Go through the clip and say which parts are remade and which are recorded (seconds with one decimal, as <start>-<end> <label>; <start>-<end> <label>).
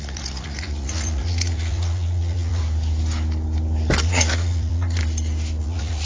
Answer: 0.0-2.6 remade; 2.6-4.0 recorded; 4.0-5.0 remade; 5.0-5.6 recorded; 5.6-6.1 remade